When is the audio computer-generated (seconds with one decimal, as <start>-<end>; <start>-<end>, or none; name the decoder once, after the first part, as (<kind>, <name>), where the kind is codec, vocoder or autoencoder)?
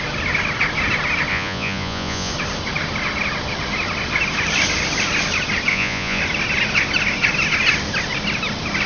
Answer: 1.3-2.3 (vocoder, Vocos); 5.7-6.2